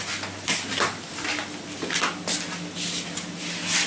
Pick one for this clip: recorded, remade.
recorded